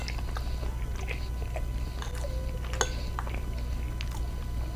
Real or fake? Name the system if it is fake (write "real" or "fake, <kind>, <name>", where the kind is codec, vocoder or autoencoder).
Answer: real